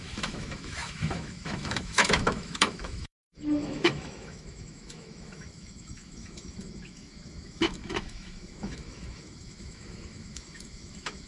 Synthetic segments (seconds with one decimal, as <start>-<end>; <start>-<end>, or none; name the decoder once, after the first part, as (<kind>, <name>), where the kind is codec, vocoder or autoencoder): 0.0-11.3 (autoencoder, DAC-VAE)